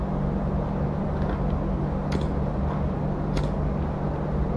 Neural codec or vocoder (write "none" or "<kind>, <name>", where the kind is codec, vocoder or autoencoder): none